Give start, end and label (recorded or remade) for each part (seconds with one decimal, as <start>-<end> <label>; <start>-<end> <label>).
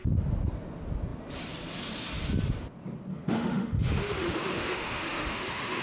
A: 0.0-3.1 recorded; 3.1-5.8 remade